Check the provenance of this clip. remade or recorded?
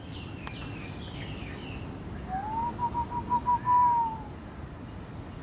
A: recorded